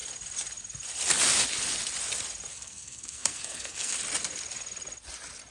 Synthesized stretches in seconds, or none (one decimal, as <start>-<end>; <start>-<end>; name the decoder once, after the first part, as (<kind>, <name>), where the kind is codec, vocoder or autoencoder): 2.5-4.0 (codec, SNAC)